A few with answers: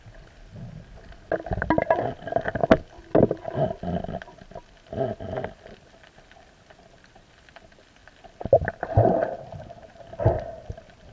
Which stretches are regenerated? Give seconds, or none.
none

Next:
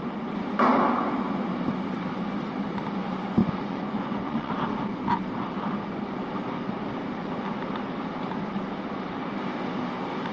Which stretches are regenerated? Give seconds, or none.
3.4-4.5 (vocoder, Vocos)